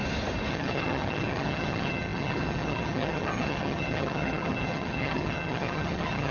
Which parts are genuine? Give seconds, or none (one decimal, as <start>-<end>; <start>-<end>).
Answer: 0.0-0.5